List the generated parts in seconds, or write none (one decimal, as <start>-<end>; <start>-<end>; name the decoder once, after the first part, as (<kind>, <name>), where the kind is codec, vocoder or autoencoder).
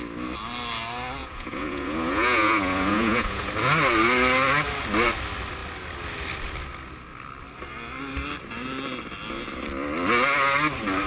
1.2-3.5 (vocoder, Vocos)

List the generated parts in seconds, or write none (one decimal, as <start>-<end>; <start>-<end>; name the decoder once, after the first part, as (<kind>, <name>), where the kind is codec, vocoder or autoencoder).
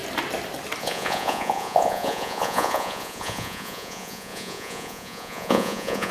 0.8-6.1 (vocoder, Vocos)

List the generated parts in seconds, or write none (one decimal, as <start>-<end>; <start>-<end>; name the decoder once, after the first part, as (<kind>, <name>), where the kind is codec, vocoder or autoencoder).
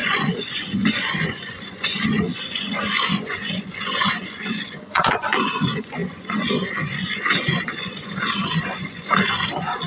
0.0-9.9 (vocoder, Vocos)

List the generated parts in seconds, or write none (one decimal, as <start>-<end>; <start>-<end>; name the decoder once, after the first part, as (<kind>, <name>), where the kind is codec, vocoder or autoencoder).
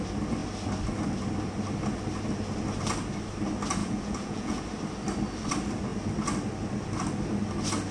3.8-4.6 (vocoder, Vocos)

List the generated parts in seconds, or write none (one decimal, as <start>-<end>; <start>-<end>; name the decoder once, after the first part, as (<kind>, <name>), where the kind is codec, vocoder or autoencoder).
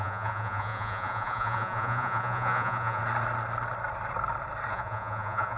0.0-3.0 (vocoder, Vocos); 4.7-5.6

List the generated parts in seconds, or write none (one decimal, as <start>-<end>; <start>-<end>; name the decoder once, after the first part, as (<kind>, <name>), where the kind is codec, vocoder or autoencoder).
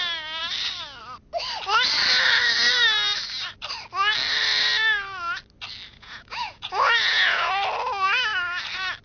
5.9-7.5 (vocoder, Vocos)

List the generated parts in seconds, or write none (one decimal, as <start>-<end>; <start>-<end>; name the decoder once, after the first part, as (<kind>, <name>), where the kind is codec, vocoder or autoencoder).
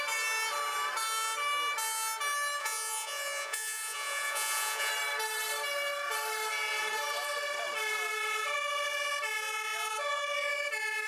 2.6-4.9 (vocoder, Vocos)